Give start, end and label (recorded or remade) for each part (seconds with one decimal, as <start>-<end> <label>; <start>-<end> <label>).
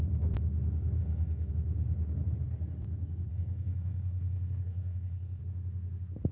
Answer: 0.0-1.0 recorded; 1.0-1.5 remade; 1.5-3.3 recorded; 3.3-5.4 remade; 5.4-6.3 recorded